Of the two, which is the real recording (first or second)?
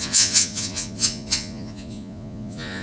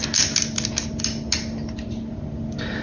second